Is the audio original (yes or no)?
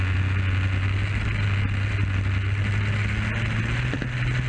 yes